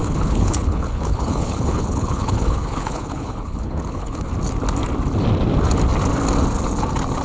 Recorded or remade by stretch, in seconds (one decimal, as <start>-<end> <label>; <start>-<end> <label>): 0.0-4.3 remade; 4.3-7.2 recorded